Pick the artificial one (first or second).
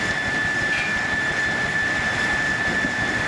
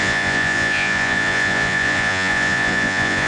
second